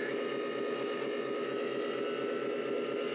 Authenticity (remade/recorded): recorded